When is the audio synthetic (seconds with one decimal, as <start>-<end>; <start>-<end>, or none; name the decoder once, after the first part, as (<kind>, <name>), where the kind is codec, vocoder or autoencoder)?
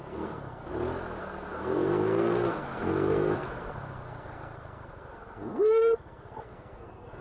0.0-0.7 (codec, SNAC); 1.2-7.2